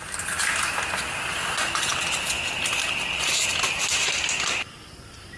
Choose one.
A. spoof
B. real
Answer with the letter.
B